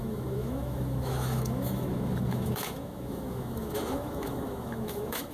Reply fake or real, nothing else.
fake